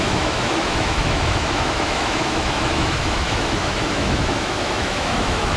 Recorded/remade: remade